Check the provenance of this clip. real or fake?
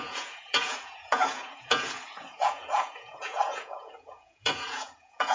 fake